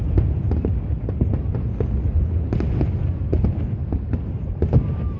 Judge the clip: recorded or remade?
recorded